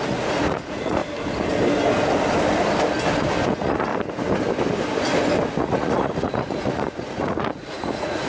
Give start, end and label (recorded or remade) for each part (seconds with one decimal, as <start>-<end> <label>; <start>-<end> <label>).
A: 0.0-1.0 remade; 1.0-3.5 recorded; 3.5-3.9 remade; 3.9-5.6 recorded; 5.6-8.3 remade

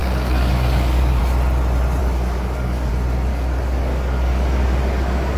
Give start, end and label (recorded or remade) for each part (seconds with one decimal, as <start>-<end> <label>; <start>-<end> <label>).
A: 0.0-1.2 remade; 1.2-2.0 recorded; 2.0-2.9 remade; 2.9-3.3 recorded; 3.3-5.4 remade

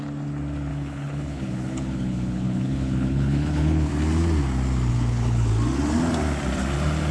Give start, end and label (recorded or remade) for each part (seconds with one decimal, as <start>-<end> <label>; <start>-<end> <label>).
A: 0.0-0.7 recorded; 0.7-3.9 remade; 3.9-4.9 recorded; 4.9-5.5 remade; 5.5-7.1 recorded

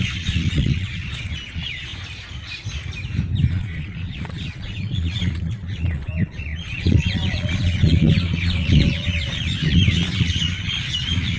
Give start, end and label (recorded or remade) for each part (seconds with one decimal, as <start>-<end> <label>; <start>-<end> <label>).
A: 0.0-1.9 remade; 1.9-3.5 recorded; 3.5-11.4 remade

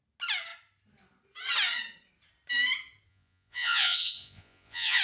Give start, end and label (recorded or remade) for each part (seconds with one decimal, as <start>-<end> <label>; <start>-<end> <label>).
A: 0.0-3.1 recorded; 3.1-5.0 remade

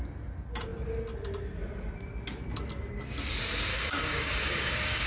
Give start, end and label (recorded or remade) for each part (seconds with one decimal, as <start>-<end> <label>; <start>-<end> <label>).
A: 0.0-3.7 recorded; 3.7-5.1 remade

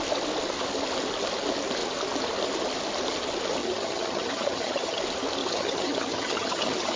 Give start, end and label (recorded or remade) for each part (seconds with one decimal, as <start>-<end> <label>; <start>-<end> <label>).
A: 0.0-3.6 recorded; 3.6-5.0 remade; 5.0-5.4 recorded; 5.4-7.0 remade